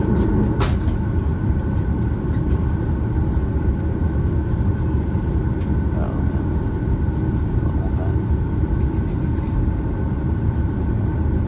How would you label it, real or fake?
real